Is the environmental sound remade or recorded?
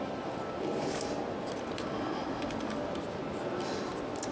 recorded